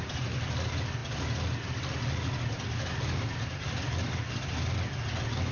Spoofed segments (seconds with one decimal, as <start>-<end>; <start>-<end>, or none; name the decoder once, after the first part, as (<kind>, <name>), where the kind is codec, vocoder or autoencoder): none